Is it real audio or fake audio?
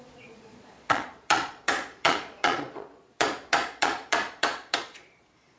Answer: fake